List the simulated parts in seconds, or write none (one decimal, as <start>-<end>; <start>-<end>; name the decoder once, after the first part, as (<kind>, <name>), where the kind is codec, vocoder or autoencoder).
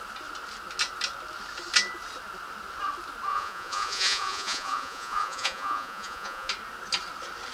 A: 3.3-6.5 (vocoder, Vocos)